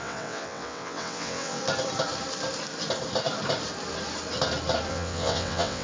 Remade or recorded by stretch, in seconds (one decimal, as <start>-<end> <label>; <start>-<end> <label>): 0.0-1.6 remade; 1.6-4.9 recorded; 4.9-5.8 remade